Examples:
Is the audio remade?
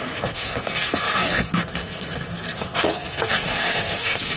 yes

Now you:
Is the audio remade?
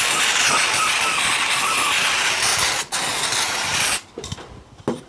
no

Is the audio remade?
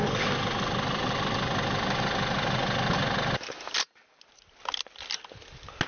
no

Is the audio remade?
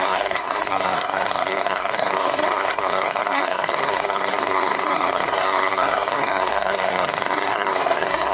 yes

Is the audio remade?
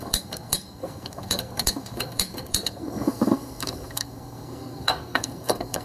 yes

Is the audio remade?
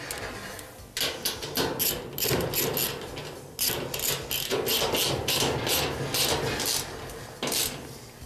no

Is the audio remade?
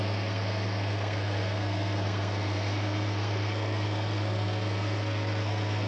yes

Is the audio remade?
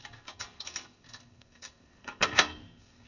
yes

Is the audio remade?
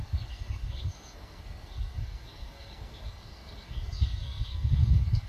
yes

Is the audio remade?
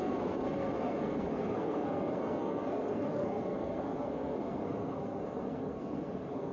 yes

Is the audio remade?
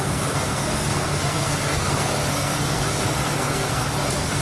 yes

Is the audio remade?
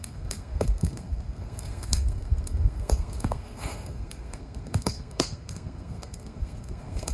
yes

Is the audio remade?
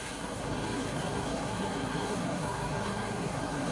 yes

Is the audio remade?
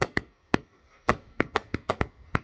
yes